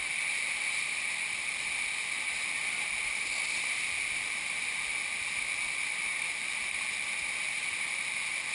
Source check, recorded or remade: recorded